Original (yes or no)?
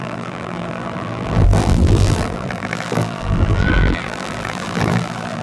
no